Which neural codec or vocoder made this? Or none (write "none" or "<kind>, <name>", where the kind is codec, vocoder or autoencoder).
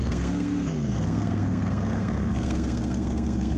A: codec, SNAC